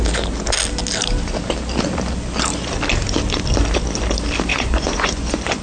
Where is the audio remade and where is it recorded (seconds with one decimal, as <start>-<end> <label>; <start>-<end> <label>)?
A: 0.0-4.5 recorded; 4.5-5.6 remade